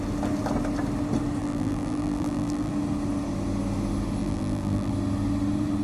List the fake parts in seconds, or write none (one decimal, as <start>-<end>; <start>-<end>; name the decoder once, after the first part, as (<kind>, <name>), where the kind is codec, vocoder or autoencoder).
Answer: 1.4-2.7 (vocoder, BigVGAN v2); 4.2-4.9